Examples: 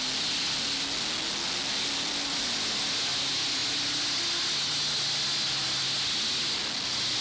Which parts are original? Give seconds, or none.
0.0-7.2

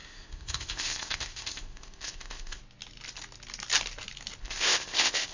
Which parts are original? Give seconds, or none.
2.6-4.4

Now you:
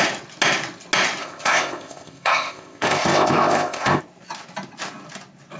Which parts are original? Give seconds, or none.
0.0-1.2; 4.0-5.6

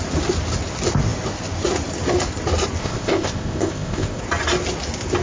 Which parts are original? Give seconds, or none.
0.0-2.8; 4.2-5.2